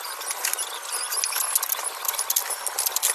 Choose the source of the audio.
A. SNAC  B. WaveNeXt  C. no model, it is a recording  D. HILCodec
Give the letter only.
C